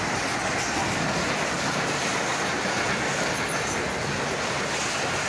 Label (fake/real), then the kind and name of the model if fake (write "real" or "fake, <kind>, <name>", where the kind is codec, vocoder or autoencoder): real